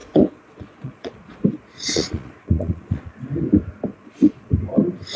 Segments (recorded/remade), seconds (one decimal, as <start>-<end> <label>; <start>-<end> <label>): 0.0-3.1 remade; 3.1-3.9 recorded; 3.9-4.5 remade; 4.5-5.2 recorded